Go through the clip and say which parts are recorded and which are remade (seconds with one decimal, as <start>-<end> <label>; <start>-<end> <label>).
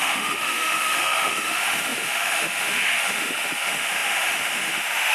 0.0-5.1 remade